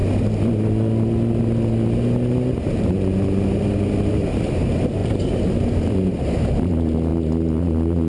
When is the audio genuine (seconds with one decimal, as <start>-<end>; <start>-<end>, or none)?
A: 0.0-2.8; 7.1-7.6